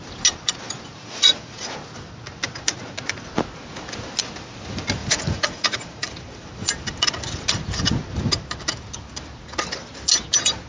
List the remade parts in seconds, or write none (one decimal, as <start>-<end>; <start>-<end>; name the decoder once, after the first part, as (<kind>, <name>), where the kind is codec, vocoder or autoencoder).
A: 1.0-1.5 (vocoder, Vocos); 5.0-6.1